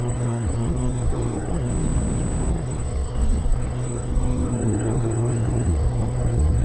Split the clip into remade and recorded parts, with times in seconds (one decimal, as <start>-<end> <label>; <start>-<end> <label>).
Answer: 0.0-1.7 remade; 1.7-2.5 recorded; 2.5-6.6 remade